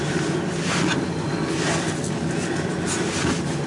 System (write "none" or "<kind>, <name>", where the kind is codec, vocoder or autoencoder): none